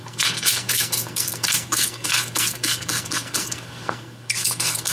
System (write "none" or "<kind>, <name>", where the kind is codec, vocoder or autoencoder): codec, SNAC